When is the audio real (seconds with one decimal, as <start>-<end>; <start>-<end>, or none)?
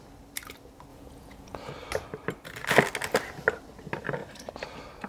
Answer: 0.0-0.9; 1.7-5.1